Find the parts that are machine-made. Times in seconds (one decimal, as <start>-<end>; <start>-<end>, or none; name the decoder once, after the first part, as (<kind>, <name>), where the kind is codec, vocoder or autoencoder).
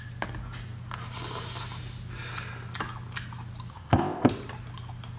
3.7-4.3 (codec, ZipCodec)